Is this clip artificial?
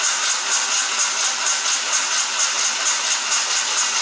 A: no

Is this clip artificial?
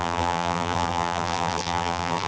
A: yes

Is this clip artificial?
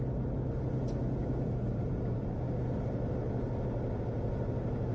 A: no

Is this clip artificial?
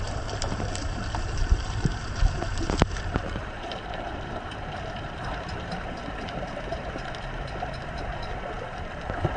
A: yes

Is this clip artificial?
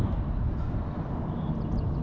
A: no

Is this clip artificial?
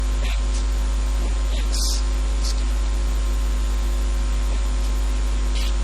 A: no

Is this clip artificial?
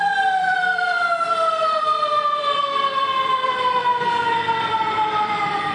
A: yes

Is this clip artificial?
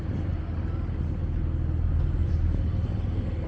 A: no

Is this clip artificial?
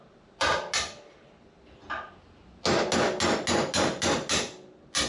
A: no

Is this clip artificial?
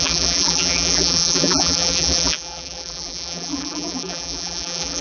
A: yes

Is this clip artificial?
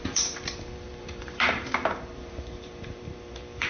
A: yes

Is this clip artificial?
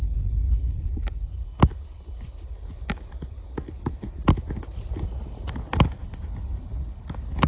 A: no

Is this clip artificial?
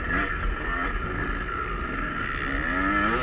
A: no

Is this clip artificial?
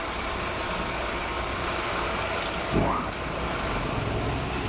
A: no